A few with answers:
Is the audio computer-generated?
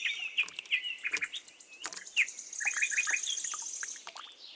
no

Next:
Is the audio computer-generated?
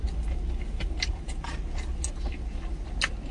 no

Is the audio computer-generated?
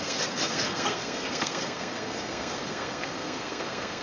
yes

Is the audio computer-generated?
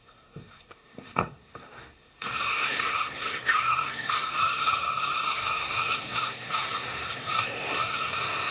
yes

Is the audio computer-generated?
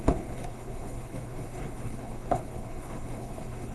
yes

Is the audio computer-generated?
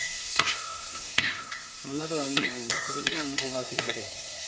yes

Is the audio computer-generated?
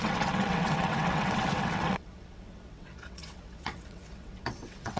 yes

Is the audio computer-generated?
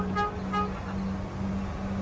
no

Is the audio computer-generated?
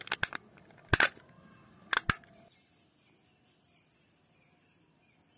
no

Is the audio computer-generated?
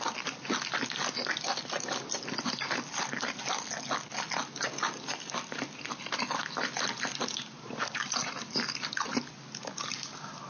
no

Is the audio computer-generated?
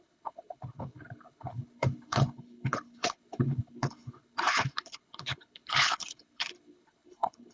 yes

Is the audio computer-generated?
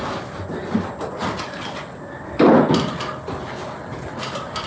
no